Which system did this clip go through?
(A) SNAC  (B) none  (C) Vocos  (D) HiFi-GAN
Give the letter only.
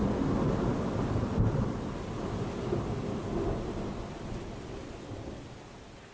B